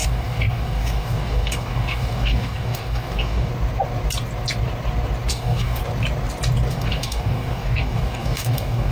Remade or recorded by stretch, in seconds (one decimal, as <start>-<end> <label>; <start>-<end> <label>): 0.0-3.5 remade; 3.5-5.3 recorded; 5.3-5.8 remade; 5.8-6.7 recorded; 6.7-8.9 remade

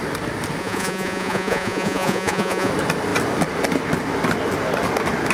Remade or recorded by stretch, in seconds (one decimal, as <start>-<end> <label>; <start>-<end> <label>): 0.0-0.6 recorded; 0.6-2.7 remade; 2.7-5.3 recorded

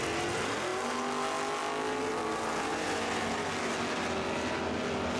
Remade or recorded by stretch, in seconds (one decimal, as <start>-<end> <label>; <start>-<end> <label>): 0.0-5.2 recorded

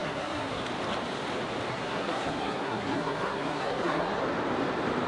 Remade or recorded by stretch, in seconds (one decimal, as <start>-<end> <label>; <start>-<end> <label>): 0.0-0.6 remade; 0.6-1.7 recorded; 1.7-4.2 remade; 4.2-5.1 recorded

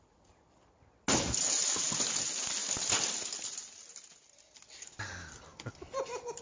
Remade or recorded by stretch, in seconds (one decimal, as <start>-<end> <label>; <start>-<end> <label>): 0.0-6.4 recorded

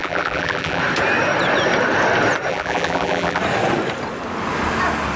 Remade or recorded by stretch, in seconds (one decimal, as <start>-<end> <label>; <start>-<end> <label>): 0.0-0.8 remade; 0.8-2.5 recorded; 2.5-3.4 remade; 3.4-5.2 recorded

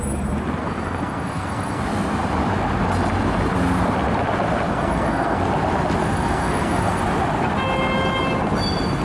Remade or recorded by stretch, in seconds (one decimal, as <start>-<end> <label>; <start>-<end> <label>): 0.0-0.6 recorded; 0.6-1.8 remade; 1.8-4.7 recorded; 4.7-5.4 remade; 5.4-6.0 recorded; 6.0-7.0 remade; 7.0-9.0 recorded